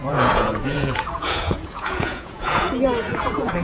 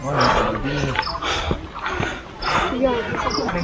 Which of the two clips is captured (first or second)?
second